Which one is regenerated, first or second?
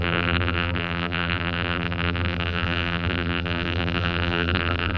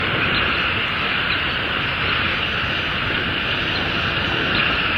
first